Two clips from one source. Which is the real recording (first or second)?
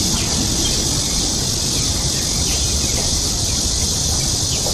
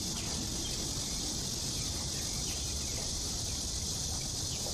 first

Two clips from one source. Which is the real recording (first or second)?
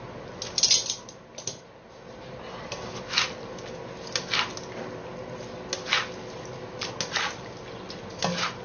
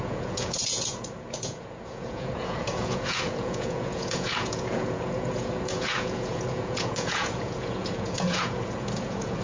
first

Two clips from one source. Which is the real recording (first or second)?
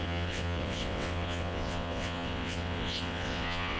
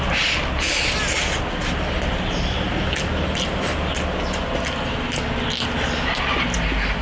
second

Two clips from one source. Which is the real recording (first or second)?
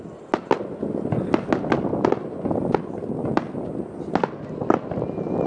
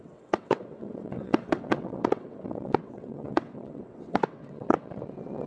first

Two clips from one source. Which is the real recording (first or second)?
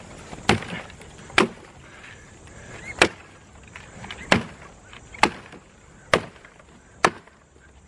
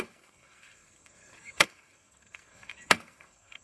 first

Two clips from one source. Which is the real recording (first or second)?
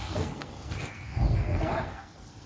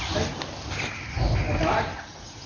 second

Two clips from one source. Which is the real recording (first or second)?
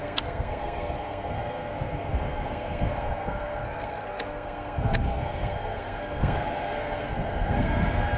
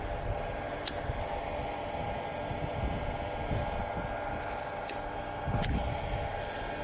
second